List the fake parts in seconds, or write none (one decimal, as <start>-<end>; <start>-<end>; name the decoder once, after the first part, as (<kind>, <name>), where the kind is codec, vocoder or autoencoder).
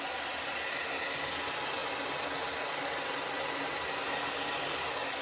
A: none